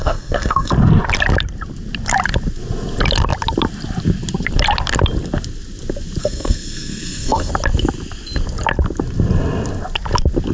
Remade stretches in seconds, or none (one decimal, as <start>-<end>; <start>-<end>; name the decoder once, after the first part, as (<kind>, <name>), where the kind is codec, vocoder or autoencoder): 0.0-0.7 (codec, SNAC); 6.2-7.5